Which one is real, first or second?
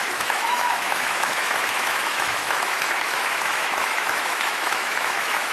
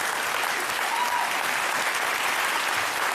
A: second